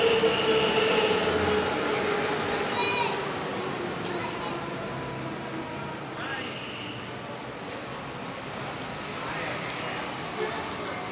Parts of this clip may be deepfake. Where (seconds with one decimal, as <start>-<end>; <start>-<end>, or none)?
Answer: 3.5-4.5